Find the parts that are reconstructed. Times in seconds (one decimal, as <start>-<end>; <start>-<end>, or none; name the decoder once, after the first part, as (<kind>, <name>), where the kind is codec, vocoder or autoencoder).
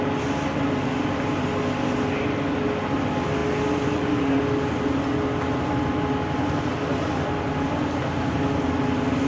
none